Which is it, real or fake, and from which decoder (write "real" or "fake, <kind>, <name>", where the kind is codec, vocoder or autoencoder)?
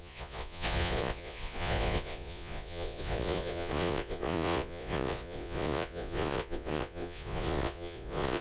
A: fake, vocoder, Vocos